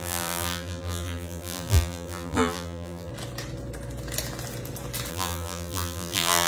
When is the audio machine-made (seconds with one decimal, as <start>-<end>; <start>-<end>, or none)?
0.0-3.1; 5.1-6.5